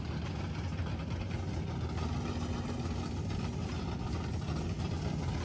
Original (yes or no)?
yes